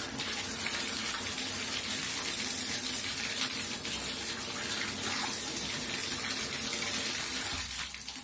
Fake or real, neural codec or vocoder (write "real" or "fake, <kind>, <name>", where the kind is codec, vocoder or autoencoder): real